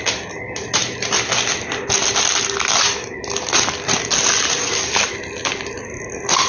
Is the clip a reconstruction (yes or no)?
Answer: no